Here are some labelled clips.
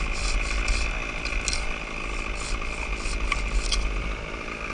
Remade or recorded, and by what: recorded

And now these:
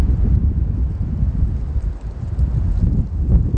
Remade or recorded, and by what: recorded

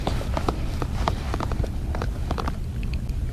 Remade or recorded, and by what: remade, vocoder, BigVGAN v2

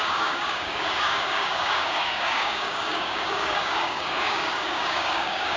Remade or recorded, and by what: remade, codec, DAC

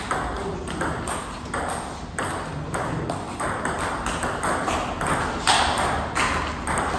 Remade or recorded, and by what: recorded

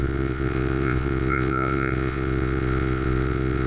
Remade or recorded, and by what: remade, vocoder, Vocos